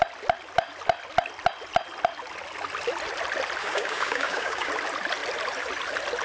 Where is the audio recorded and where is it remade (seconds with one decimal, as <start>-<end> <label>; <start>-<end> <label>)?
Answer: 0.0-3.6 recorded; 3.6-4.7 remade; 4.7-6.2 recorded